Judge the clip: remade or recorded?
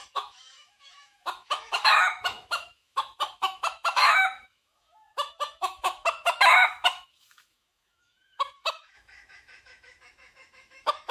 remade